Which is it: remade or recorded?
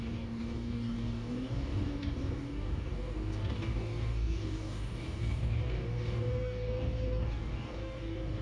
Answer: remade